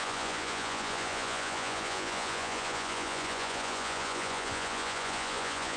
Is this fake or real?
fake